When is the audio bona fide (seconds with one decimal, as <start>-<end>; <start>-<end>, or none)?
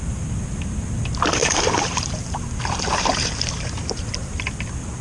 0.0-1.4; 4.3-5.0